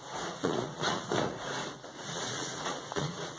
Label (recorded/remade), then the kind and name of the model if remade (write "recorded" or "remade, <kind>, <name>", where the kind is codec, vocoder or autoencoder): remade, vocoder, Vocos